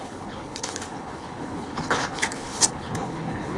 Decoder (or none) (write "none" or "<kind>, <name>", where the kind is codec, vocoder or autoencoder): codec, HILCodec